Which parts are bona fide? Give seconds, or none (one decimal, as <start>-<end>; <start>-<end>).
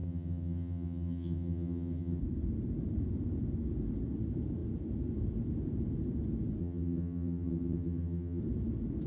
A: 2.2-6.6; 8.4-9.1